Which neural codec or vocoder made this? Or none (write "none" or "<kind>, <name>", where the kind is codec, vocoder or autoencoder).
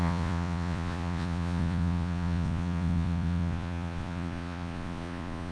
vocoder, Vocos